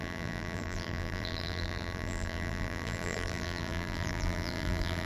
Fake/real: fake